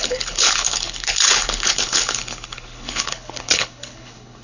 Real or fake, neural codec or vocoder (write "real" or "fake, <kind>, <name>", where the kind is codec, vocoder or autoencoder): fake, codec, HILCodec